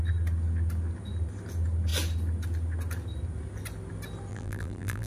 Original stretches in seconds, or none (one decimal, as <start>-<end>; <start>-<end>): 0.0-4.3